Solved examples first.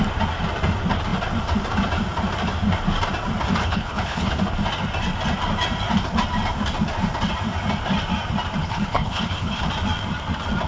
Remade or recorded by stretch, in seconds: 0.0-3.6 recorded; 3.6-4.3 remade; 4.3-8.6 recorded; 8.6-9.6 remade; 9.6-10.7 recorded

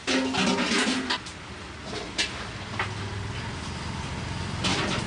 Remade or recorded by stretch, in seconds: 0.0-1.8 recorded; 1.8-2.5 remade; 2.5-5.1 recorded

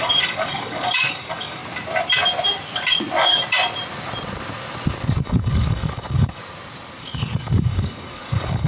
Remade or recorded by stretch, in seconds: 0.0-1.6 remade; 1.6-5.1 recorded; 5.1-6.4 remade; 6.4-7.0 recorded; 7.0-8.7 remade

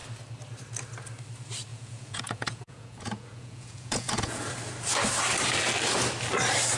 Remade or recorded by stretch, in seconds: 0.0-1.7 recorded; 1.7-4.5 remade; 4.5-6.8 recorded

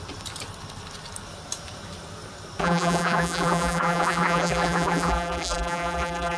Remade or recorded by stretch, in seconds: 0.0-2.6 recorded; 2.6-6.4 remade

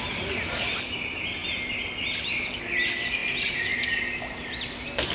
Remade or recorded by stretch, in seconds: 0.0-5.1 recorded